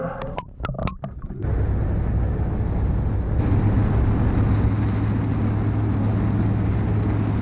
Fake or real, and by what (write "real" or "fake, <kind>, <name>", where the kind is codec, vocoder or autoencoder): real